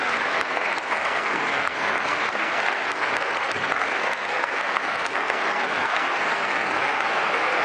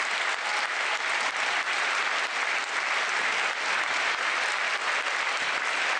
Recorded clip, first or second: second